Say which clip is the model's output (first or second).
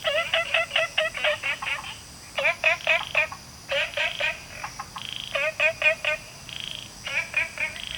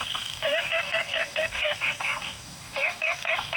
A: second